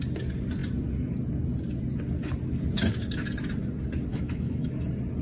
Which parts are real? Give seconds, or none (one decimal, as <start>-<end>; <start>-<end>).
0.0-4.1; 4.7-5.2